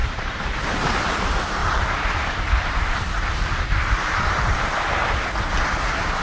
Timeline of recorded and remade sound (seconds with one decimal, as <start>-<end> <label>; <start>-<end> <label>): 0.0-0.6 remade; 0.6-1.6 recorded; 1.6-5.3 remade; 5.3-6.2 recorded